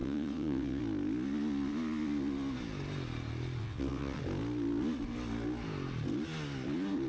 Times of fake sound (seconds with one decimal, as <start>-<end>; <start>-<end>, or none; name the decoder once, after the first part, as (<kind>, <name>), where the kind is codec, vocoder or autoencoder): 0.0-0.8 (vocoder, WaveNeXt); 3.6-4.2